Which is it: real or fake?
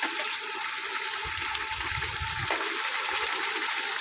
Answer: real